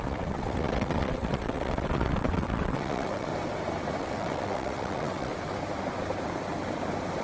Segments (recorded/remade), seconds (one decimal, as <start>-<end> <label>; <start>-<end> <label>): 0.0-3.3 remade; 3.3-4.0 recorded; 4.0-5.3 remade; 5.3-7.2 recorded